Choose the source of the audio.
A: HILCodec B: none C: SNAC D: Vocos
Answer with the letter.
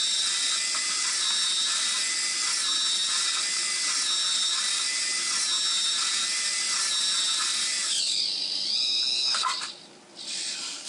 B